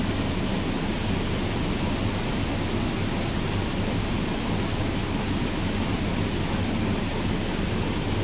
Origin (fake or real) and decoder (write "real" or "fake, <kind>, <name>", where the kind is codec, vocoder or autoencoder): real